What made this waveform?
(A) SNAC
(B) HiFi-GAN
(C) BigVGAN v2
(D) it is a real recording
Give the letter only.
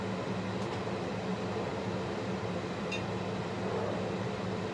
D